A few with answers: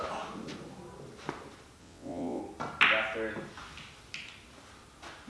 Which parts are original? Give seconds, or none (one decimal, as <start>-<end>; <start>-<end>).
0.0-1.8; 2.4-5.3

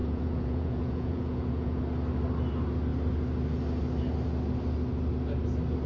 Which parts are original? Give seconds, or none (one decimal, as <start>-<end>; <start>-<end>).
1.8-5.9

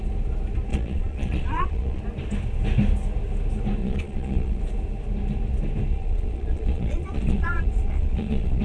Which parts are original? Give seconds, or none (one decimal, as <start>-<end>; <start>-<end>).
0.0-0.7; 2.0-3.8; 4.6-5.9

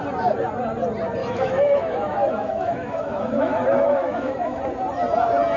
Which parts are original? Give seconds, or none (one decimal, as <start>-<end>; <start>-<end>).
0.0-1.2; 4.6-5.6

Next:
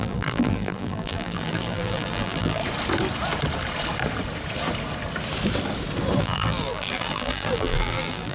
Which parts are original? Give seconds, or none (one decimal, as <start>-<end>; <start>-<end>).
2.6-6.2

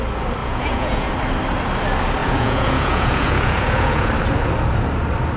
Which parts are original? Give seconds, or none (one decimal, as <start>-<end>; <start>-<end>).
0.0-0.4; 1.1-2.2; 4.1-5.4

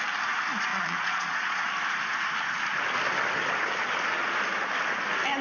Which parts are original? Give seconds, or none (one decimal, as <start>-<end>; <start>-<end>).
0.0-0.7; 1.7-5.4

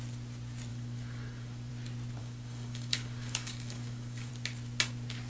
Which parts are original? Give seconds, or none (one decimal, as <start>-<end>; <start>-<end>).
0.0-0.7; 1.7-2.2; 4.3-5.3